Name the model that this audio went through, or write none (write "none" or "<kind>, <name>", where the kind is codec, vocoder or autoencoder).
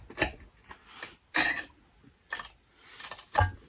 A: none